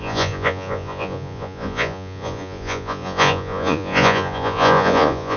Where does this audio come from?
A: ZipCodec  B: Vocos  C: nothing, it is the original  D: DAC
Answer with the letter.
B